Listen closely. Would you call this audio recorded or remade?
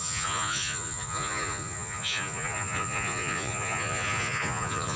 remade